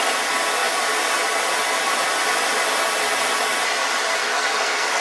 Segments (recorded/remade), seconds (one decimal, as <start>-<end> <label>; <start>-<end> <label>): 0.0-4.2 recorded; 4.2-5.0 remade